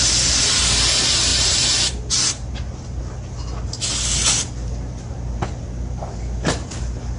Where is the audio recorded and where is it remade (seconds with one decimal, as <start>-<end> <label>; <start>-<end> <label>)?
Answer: 0.0-1.3 recorded; 1.3-3.0 remade; 3.0-7.2 recorded